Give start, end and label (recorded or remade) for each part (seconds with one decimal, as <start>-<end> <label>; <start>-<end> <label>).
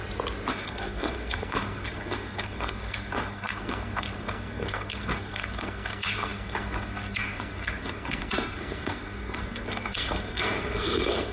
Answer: 0.0-0.5 recorded; 0.5-11.3 remade